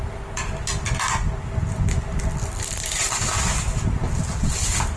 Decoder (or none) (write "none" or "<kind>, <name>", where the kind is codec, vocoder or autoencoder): none